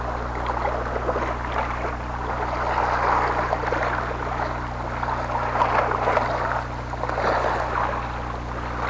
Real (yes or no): yes